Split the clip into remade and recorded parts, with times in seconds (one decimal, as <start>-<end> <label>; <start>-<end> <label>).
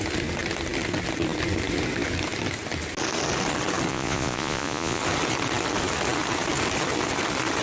0.0-3.9 recorded; 3.9-5.0 remade; 5.0-7.6 recorded